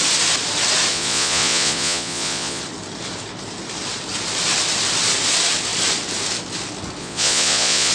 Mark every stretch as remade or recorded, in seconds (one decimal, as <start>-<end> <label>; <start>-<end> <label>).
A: 0.0-0.9 recorded; 0.9-2.6 remade; 2.6-7.0 recorded; 7.0-7.9 remade